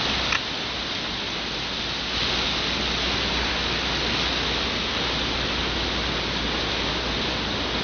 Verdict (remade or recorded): recorded